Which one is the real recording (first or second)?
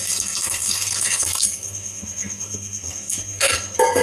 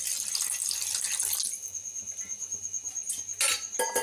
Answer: second